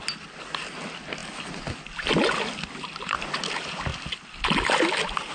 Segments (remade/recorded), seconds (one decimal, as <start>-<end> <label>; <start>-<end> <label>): 0.0-5.3 recorded